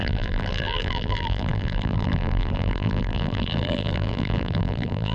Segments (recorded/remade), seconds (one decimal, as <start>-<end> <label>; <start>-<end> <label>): 0.0-5.1 remade